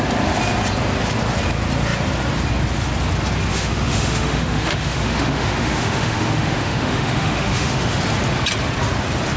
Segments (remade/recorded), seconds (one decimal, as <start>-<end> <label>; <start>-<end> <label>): 0.0-3.5 recorded; 3.5-8.0 remade; 8.0-9.4 recorded